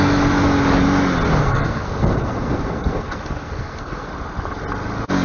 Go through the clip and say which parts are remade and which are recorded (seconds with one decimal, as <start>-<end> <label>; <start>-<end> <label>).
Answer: 0.0-1.4 recorded; 1.4-4.1 remade; 4.1-5.2 recorded